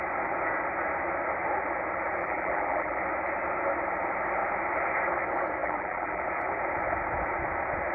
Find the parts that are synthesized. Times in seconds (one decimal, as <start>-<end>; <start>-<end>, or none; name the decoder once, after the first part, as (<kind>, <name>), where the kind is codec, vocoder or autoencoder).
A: 2.2-3.0 (vocoder, BigVGAN v2); 5.6-6.2